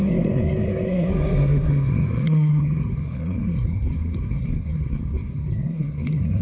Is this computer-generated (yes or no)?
yes